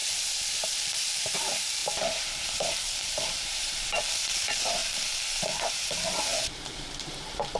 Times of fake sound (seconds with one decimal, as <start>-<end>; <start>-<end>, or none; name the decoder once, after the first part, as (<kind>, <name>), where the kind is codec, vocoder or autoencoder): 0.8-4.8 (vocoder, BigVGAN v2); 5.6-7.6